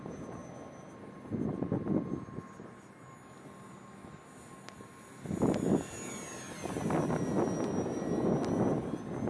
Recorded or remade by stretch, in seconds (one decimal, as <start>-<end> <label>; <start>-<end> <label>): 0.0-9.3 recorded